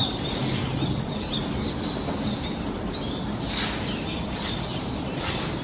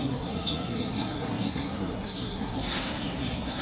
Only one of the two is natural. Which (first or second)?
first